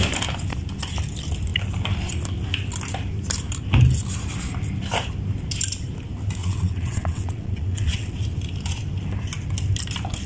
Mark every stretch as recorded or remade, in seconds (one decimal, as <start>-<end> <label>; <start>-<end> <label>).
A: 0.0-6.4 recorded; 6.4-8.1 remade; 8.1-10.3 recorded